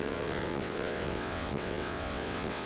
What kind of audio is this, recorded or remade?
remade